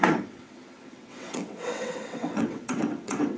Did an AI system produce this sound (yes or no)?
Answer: yes